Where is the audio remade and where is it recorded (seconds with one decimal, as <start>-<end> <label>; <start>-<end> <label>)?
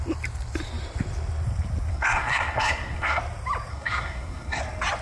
0.0-1.9 recorded; 1.9-3.2 remade; 3.2-3.7 recorded; 3.7-4.6 remade; 4.6-5.0 recorded